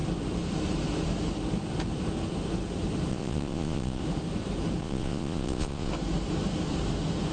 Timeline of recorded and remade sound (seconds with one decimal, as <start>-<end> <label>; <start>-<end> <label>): 0.0-3.1 recorded; 3.1-4.0 remade; 4.0-4.8 recorded; 4.8-5.9 remade; 5.9-7.3 recorded